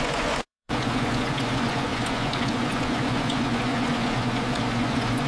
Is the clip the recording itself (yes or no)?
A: no